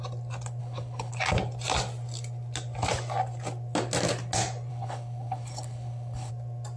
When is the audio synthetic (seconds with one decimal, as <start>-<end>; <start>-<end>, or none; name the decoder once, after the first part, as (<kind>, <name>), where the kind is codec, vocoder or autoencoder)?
0.6-1.1 (codec, HILCodec); 4.7-6.3